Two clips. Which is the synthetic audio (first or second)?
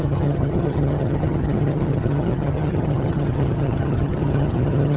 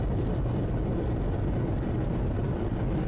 first